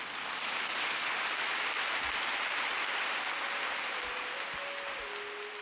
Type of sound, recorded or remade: recorded